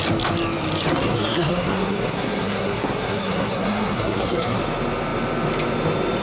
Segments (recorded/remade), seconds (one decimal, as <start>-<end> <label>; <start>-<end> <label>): 0.0-0.9 recorded; 0.9-4.6 remade; 4.6-6.2 recorded